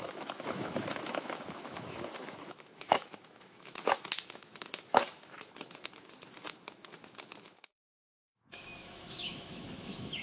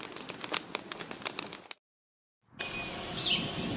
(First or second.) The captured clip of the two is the second